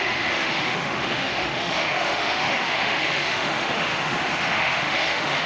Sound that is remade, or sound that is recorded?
remade